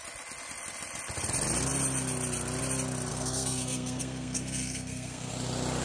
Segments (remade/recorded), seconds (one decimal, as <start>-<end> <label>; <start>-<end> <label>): 0.0-3.1 recorded; 3.1-5.3 remade; 5.3-5.8 recorded